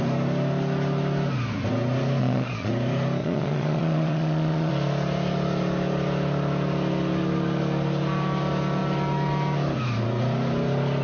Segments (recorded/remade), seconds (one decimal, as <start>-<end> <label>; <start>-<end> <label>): 0.0-2.2 recorded; 2.2-2.7 remade; 2.7-3.2 recorded; 3.2-4.7 remade; 4.7-11.0 recorded